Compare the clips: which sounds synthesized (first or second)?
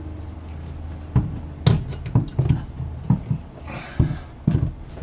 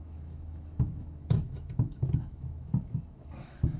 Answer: second